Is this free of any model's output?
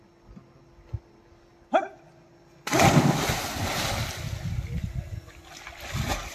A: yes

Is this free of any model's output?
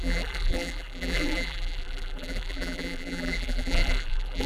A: no